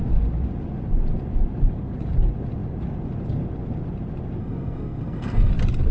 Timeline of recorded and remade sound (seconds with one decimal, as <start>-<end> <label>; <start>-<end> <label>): 0.0-4.4 recorded; 4.4-5.5 remade; 5.5-5.9 recorded